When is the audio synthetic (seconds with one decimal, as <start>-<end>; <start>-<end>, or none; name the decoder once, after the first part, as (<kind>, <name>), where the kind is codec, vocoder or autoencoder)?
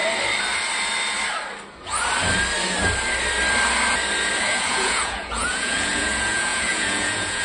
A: 4.4-7.4 (vocoder, Vocos)